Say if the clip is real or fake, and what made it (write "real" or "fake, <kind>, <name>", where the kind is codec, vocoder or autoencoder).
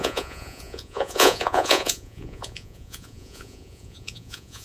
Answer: fake, vocoder, Vocos